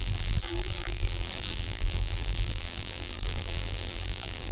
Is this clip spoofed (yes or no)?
yes